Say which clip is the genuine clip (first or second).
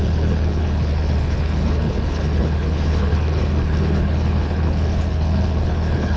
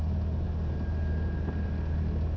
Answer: second